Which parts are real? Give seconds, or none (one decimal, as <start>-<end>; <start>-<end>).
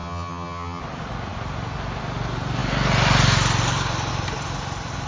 0.8-5.1